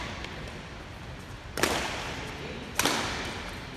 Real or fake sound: real